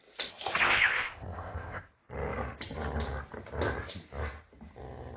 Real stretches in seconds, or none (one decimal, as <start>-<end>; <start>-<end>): 0.0-0.6; 1.9-5.2